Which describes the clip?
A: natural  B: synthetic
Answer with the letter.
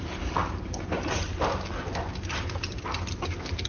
A